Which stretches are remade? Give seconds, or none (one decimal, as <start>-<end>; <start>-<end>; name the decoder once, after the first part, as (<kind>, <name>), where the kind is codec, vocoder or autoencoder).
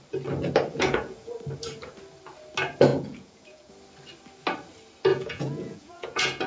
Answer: 0.7-1.3 (vocoder, Vocos); 2.9-3.7; 5.1-6.5